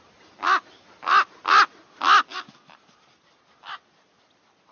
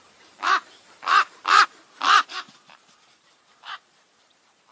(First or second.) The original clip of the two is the first